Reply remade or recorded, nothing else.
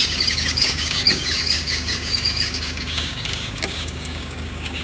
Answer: remade